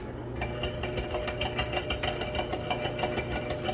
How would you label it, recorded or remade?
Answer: recorded